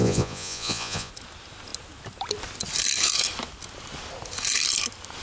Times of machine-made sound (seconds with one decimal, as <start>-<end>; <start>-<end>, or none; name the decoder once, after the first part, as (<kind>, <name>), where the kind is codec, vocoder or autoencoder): 0.0-1.1 (vocoder, Vocos)